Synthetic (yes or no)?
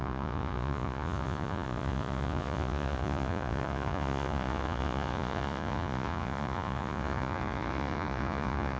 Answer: yes